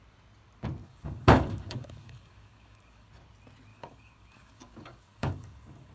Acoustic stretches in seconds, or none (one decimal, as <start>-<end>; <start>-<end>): 0.0-0.8; 3.1-3.7